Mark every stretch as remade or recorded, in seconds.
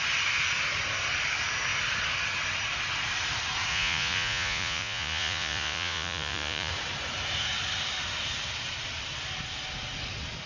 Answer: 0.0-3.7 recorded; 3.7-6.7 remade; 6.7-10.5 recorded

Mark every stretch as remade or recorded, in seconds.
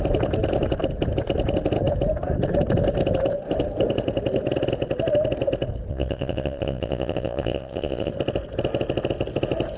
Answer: 0.0-5.9 recorded; 5.9-8.1 remade; 8.1-9.8 recorded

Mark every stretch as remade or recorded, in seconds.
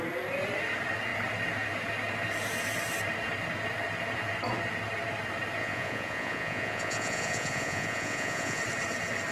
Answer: 0.0-5.6 recorded; 5.6-8.6 remade; 8.6-9.3 recorded